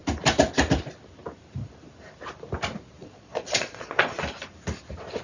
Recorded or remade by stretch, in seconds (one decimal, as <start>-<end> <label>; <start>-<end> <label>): 0.0-3.0 recorded; 3.0-4.2 remade; 4.2-5.2 recorded